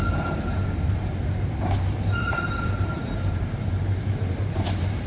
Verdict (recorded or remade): remade